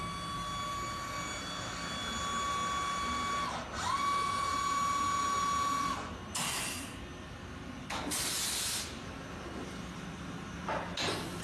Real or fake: real